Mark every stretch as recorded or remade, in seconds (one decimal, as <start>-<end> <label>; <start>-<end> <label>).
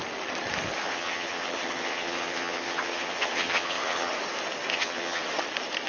0.0-0.8 recorded; 0.8-4.1 remade; 4.1-4.7 recorded; 4.7-5.2 remade; 5.2-5.9 recorded